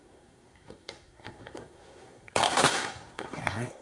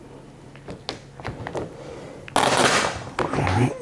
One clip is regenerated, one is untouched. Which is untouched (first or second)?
second